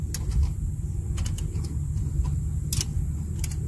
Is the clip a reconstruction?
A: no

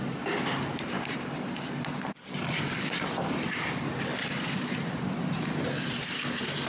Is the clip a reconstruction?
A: yes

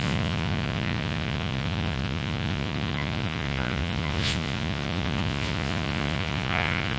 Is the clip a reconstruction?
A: yes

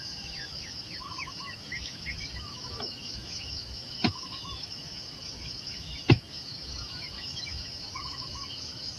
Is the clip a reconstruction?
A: yes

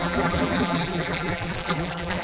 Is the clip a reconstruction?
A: yes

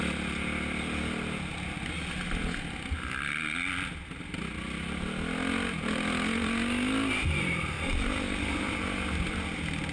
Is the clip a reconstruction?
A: no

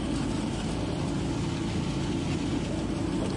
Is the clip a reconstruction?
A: no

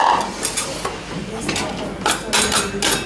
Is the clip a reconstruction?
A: no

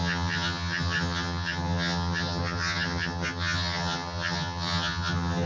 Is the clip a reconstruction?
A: yes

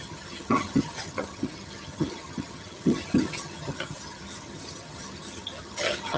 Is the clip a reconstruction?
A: yes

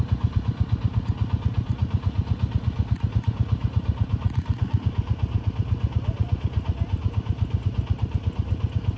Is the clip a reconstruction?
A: no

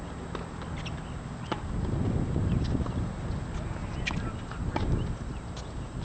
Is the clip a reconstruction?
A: no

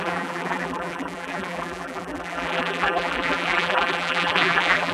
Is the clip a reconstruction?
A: yes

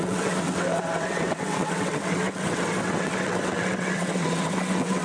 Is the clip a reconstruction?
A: yes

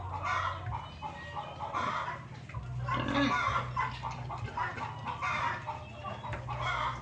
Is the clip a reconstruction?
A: no